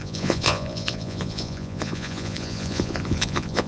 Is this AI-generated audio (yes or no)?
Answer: yes